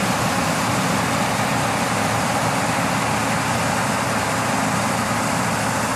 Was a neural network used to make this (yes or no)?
yes